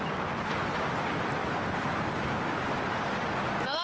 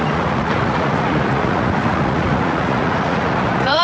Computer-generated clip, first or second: second